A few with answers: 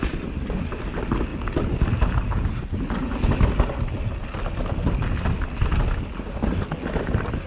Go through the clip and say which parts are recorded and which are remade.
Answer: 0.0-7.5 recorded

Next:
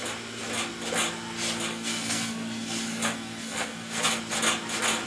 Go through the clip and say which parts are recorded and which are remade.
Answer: 0.0-1.7 recorded; 1.7-4.2 remade; 4.2-5.1 recorded

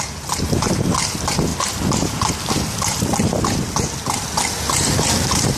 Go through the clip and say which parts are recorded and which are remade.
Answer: 0.0-5.6 recorded

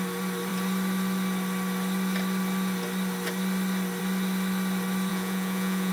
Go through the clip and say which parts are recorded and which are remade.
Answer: 0.0-5.1 recorded; 5.1-5.9 remade